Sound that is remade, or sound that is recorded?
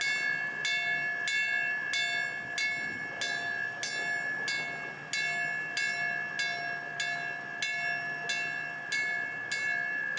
recorded